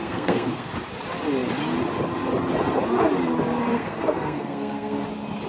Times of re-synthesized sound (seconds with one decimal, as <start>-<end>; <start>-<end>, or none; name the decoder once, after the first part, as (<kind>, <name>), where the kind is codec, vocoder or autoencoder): 0.0-0.7 (codec, SNAC); 3.7-5.0